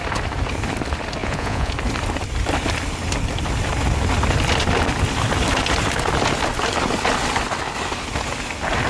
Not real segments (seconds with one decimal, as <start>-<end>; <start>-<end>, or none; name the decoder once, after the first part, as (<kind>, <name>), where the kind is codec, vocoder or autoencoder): 1.2-1.7 (vocoder, Vocos)